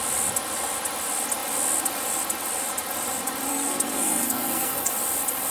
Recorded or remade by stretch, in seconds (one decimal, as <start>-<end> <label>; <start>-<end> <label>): 0.0-3.5 recorded; 3.5-4.9 remade; 4.9-5.5 recorded